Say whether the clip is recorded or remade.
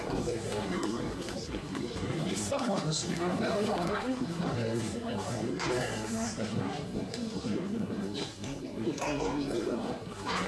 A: remade